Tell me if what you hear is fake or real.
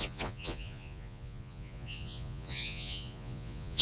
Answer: fake